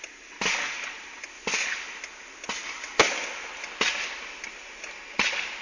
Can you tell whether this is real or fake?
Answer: real